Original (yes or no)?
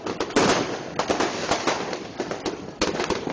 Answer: yes